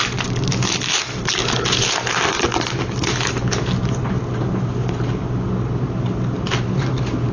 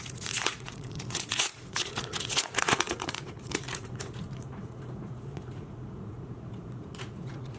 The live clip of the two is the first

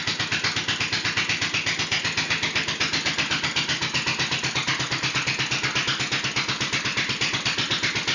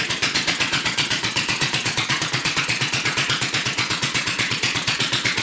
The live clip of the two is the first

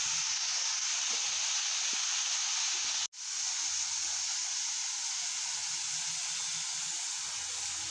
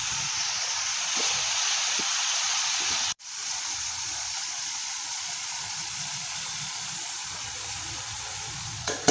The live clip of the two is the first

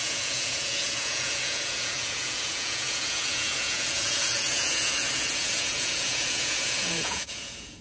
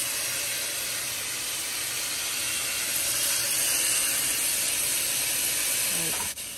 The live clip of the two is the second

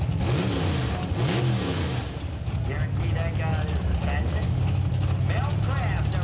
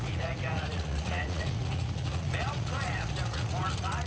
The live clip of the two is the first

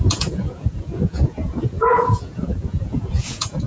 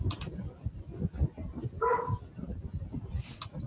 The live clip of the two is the second